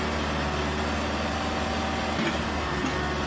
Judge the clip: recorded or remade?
recorded